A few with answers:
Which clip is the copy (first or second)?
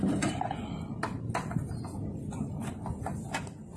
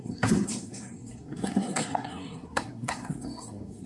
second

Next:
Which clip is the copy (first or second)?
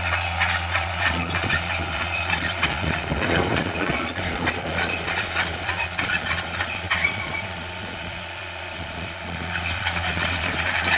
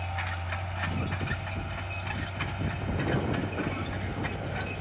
first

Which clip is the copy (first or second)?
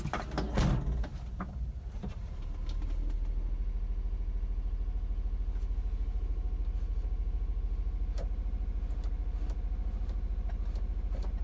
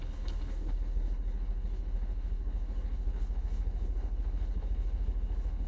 second